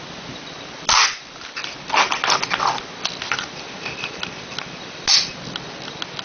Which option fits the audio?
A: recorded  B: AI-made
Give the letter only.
A